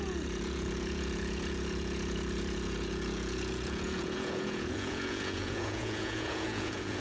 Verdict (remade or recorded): remade